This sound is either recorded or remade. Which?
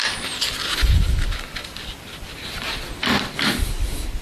recorded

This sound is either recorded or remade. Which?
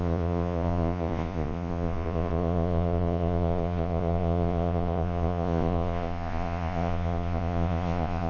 remade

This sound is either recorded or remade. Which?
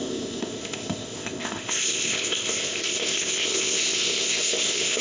remade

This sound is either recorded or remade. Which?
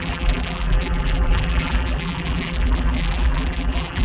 remade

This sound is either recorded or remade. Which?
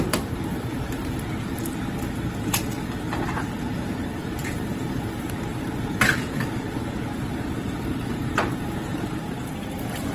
remade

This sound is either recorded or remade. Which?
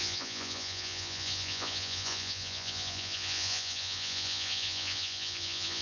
remade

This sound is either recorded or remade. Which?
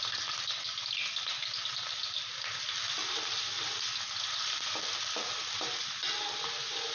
recorded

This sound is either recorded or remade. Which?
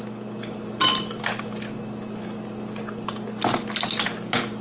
recorded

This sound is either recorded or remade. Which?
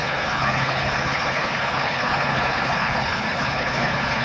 remade